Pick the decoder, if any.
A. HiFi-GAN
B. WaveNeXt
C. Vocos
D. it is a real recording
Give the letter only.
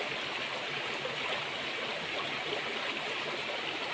D